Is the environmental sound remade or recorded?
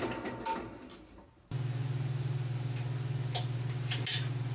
recorded